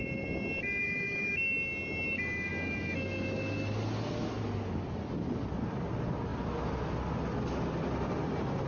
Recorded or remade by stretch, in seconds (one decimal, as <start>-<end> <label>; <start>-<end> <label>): 0.0-0.8 recorded; 0.8-1.3 remade; 1.3-8.7 recorded